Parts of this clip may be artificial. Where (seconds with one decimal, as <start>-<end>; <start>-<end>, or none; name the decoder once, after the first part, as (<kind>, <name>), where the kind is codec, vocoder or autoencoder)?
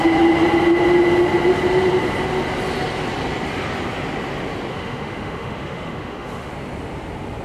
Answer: 4.7-6.5 (autoencoder, DAC-VAE)